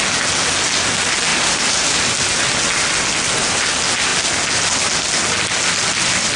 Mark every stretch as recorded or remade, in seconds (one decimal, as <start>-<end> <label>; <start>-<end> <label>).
0.0-1.3 recorded; 1.3-2.1 remade; 2.1-6.4 recorded